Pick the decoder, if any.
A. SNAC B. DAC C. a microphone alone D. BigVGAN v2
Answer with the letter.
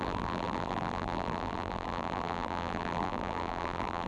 D